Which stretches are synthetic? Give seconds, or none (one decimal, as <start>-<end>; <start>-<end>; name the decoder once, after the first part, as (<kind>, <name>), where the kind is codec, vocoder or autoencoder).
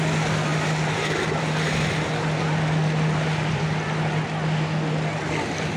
none